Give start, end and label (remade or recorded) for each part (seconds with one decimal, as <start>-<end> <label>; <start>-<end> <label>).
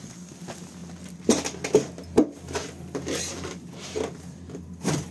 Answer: 0.0-5.1 recorded